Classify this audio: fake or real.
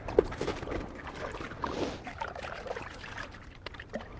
real